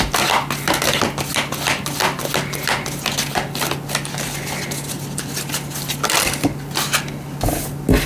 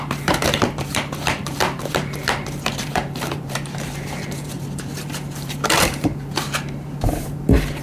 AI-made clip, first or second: second